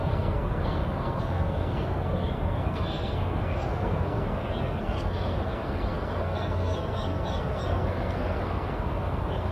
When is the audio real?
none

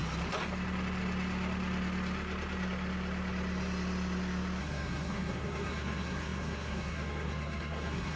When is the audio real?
0.0-4.6